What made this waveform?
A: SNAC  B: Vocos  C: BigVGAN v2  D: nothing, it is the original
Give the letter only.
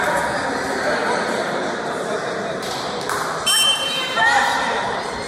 C